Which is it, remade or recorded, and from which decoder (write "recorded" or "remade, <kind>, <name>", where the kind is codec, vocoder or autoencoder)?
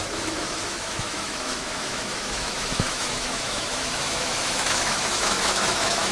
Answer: remade, autoencoder, DAC-VAE